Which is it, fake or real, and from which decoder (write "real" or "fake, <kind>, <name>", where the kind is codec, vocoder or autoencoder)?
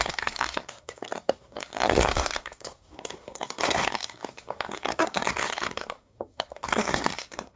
fake, codec, SNAC